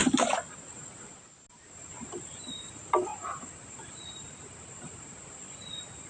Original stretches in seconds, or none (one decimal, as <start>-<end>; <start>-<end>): 0.0-6.1